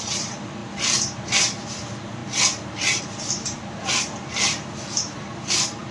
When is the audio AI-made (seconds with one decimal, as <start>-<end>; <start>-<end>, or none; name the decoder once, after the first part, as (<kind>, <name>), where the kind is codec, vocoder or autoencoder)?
0.0-2.2 (vocoder, BigVGAN v2); 3.0-5.9